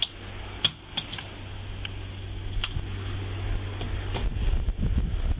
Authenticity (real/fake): real